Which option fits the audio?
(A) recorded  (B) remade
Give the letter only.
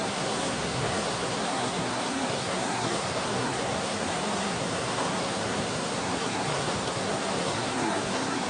B